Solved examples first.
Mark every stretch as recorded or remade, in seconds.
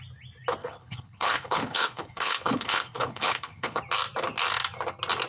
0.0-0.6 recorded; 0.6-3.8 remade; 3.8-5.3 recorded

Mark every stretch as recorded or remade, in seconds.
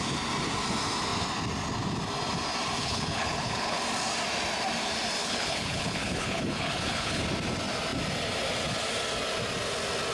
0.0-2.8 recorded; 2.8-3.8 remade; 3.8-5.2 recorded; 5.2-7.2 remade; 7.2-10.1 recorded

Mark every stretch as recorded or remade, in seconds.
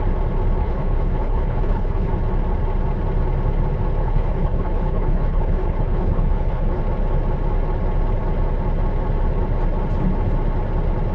0.0-0.6 recorded; 0.6-2.1 remade; 2.1-4.0 recorded; 4.0-6.8 remade; 6.8-11.1 recorded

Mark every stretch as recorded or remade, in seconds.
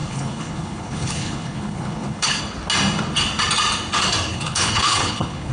0.0-2.4 remade; 2.4-4.3 recorded; 4.3-5.5 remade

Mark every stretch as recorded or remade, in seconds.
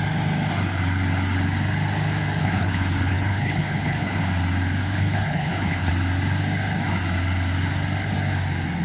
0.0-2.4 recorded; 2.4-4.2 remade; 4.2-4.8 recorded; 4.8-5.9 remade; 5.9-8.8 recorded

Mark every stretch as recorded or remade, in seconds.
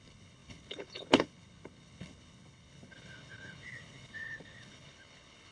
0.0-5.5 remade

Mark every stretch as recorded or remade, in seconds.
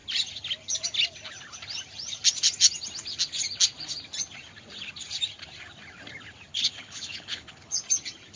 0.0-6.5 recorded; 6.5-7.7 remade; 7.7-8.4 recorded